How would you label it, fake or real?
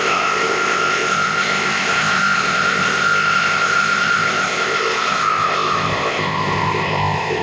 fake